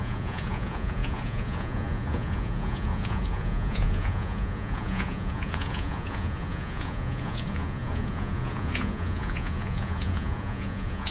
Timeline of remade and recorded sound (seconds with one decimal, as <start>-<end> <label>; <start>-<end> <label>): 0.0-11.1 remade